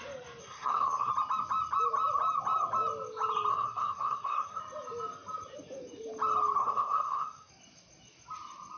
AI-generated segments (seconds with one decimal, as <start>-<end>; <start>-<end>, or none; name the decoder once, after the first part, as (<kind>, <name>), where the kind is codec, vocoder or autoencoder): 0.4-1.1 (codec, SNAC); 3.5-4.6; 6.6-7.5